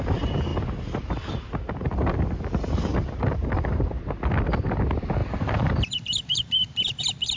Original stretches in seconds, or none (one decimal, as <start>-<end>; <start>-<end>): 0.0-2.9; 4.0-5.2; 7.0-7.4

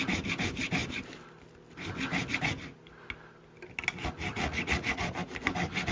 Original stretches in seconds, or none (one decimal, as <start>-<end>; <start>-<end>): 0.0-4.3; 5.0-5.9

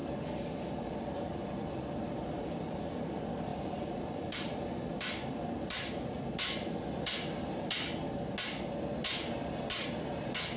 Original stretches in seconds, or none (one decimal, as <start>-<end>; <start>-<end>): 0.9-3.5; 7.1-10.6

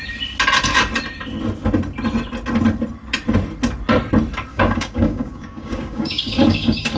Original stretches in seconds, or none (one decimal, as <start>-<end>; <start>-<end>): 0.0-4.5

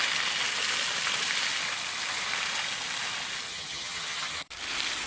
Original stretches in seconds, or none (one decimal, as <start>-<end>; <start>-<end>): 0.0-3.5; 4.5-5.1